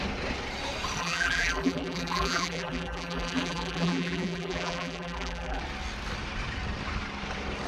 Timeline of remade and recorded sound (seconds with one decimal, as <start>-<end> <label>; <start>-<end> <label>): 0.0-1.0 recorded; 1.0-5.6 remade; 5.6-7.7 recorded